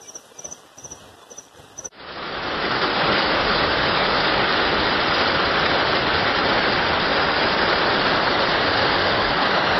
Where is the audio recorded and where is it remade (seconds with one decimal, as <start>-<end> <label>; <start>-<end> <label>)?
0.0-2.9 recorded; 2.9-4.5 remade; 4.5-8.5 recorded; 8.5-9.8 remade